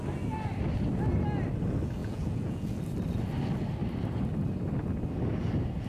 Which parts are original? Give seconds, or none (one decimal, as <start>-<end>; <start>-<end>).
0.0-2.0; 2.8-5.9